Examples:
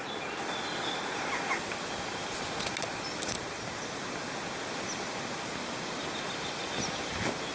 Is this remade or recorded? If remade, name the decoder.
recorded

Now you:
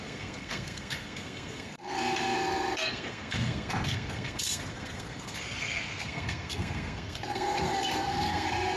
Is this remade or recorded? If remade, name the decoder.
remade, codec, SNAC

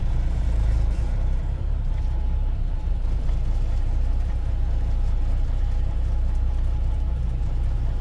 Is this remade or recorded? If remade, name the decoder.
remade, vocoder, BigVGAN v2